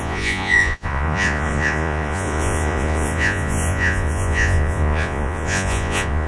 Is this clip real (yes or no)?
no